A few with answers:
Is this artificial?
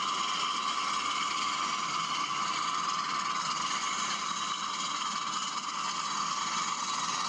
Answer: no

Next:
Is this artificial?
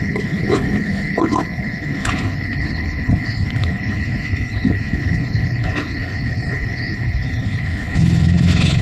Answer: yes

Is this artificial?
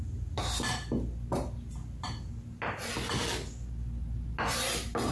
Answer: no